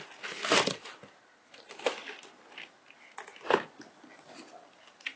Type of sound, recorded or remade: recorded